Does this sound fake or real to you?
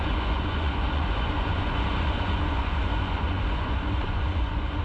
fake